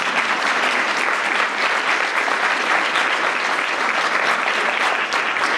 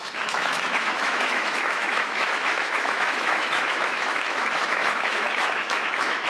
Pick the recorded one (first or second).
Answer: first